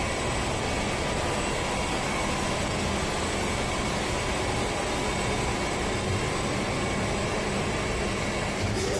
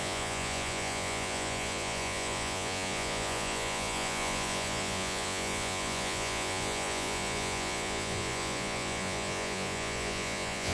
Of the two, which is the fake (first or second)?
second